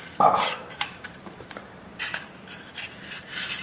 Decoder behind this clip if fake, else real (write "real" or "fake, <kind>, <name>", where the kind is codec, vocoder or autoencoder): fake, vocoder, BigVGAN v2